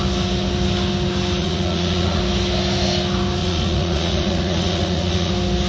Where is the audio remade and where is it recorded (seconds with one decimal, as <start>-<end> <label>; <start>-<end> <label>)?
0.0-1.4 recorded; 1.4-2.2 remade; 2.2-3.4 recorded; 3.4-5.3 remade; 5.3-5.7 recorded